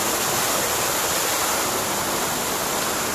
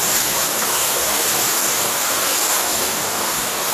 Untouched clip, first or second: first